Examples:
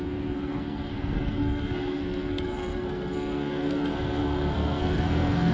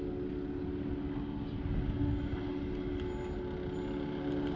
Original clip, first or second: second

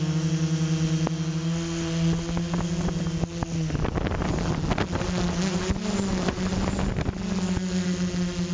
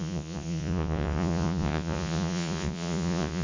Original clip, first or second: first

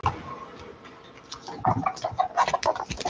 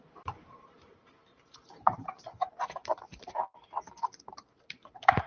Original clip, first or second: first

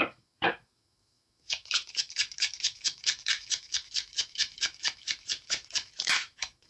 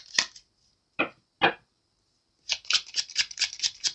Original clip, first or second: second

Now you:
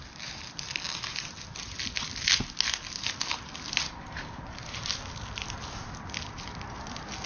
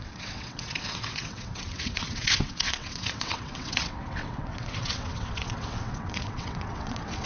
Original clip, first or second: first